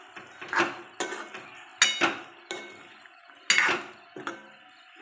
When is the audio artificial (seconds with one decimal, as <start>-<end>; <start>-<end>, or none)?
none